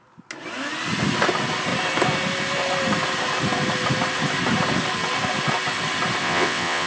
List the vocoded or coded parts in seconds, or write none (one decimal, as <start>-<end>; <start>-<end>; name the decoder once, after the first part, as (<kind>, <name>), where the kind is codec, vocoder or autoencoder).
6.2-6.9 (vocoder, WaveNeXt)